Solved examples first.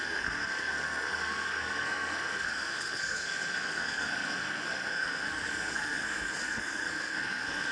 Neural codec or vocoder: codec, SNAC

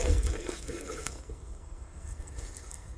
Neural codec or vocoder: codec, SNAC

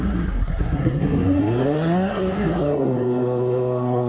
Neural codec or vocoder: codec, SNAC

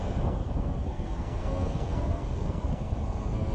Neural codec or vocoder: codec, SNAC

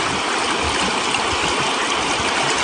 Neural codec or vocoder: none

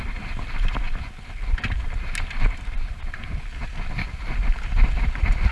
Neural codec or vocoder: none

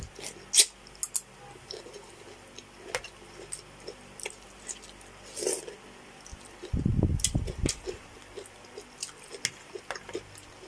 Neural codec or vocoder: none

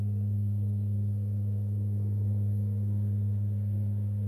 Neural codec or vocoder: codec, SNAC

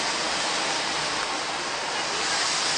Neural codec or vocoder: none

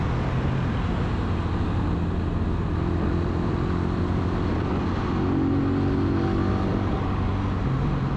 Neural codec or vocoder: none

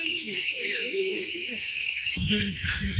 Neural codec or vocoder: codec, SNAC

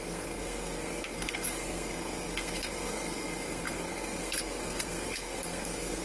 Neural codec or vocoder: codec, SNAC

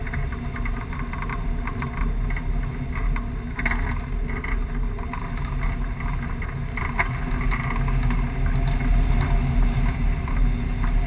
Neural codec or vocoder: none